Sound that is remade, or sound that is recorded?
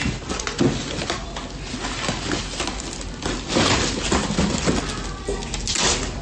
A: recorded